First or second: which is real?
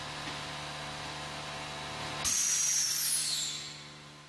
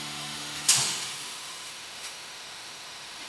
first